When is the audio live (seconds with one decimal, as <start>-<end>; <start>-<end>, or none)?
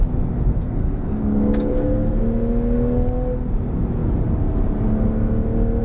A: 0.0-0.5; 1.2-1.7; 2.2-5.8